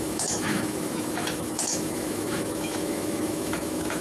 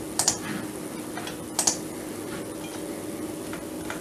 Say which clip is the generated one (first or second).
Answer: first